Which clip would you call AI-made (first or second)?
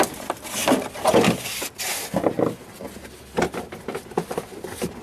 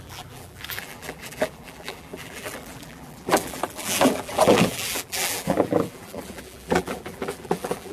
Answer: second